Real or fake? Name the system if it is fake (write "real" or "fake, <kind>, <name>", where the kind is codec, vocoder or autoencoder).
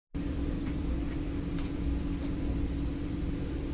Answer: fake, vocoder, BigVGAN v2